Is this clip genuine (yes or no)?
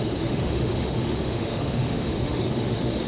no